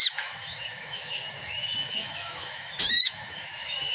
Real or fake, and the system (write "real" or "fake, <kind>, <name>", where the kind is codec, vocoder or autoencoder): fake, autoencoder, DAC-VAE